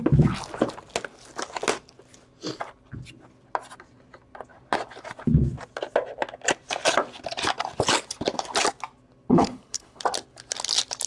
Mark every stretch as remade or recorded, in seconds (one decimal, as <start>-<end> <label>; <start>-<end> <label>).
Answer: 0.0-9.3 recorded; 9.3-10.0 remade; 10.0-11.1 recorded